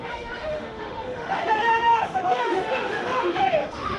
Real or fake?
fake